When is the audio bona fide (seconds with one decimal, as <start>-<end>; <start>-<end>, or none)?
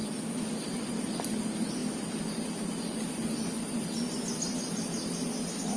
0.0-5.8